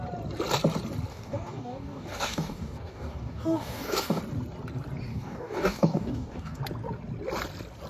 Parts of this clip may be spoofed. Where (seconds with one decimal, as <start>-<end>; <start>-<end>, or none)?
1.1-4.2; 5.1-6.6